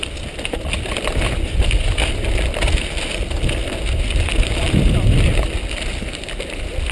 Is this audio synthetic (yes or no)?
yes